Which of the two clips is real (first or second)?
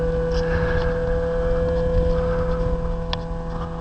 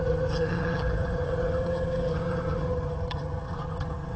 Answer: first